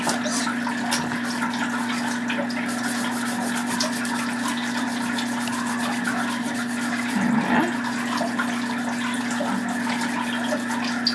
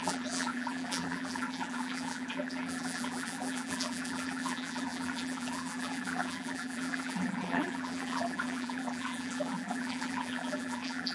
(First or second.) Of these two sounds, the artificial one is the second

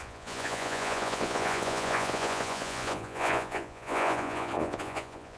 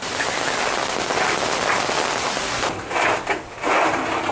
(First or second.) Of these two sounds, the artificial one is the first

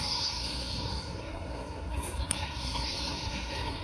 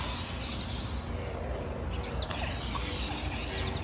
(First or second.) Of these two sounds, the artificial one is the first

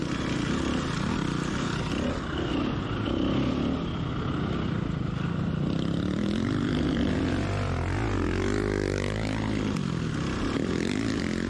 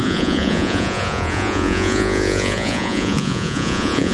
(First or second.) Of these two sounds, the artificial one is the second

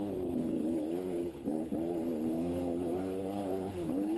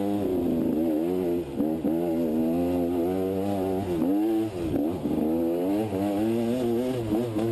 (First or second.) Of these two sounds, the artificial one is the first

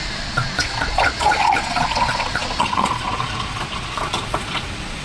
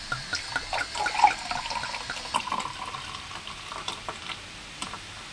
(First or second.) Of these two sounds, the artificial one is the first